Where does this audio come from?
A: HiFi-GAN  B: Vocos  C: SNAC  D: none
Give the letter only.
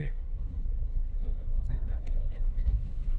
C